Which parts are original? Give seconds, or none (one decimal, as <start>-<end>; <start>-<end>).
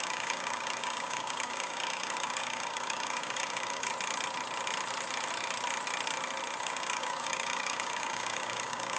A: 3.9-6.6